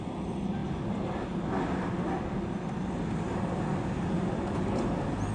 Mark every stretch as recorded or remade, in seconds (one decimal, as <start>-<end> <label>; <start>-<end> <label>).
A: 0.0-5.3 recorded